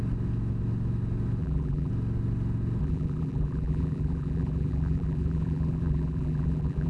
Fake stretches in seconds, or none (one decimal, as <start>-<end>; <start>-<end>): 1.4-1.9; 2.8-6.9